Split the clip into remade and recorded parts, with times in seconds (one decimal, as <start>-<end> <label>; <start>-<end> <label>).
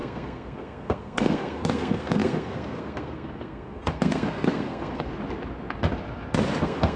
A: 0.0-5.1 remade; 5.1-6.6 recorded; 6.6-7.0 remade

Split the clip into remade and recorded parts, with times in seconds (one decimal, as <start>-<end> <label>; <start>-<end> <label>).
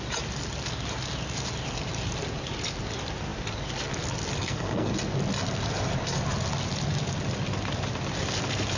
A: 0.0-4.4 recorded; 4.4-4.9 remade; 4.9-8.8 recorded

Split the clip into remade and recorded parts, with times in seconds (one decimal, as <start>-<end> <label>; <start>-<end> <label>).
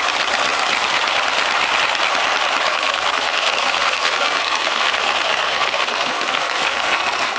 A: 0.0-2.7 recorded; 2.7-7.4 remade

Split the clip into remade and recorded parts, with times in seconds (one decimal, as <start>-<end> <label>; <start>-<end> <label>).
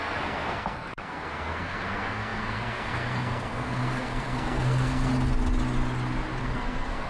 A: 0.0-5.1 remade; 5.1-6.4 recorded; 6.4-7.1 remade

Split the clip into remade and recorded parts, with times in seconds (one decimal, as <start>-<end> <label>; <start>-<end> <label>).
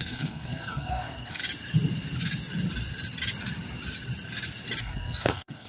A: 0.0-1.4 remade; 1.4-4.8 recorded; 4.8-5.7 remade